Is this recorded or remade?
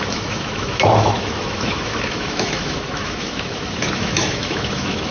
remade